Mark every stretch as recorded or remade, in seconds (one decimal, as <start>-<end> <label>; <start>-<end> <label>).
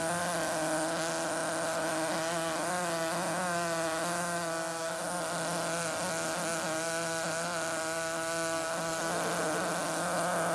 0.0-10.5 recorded